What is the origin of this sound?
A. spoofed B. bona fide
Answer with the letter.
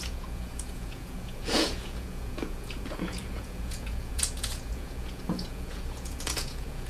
A